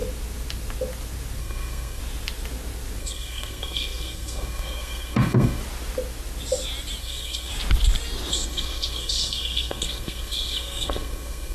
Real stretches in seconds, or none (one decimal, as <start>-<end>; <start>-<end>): 0.0-1.4; 2.0-3.0; 5.6-7.0; 7.5-8.3